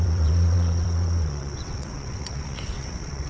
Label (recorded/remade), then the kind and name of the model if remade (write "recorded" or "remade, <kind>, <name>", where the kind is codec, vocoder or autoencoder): remade, vocoder, WaveNeXt